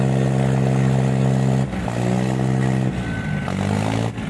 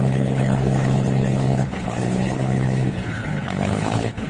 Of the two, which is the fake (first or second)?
second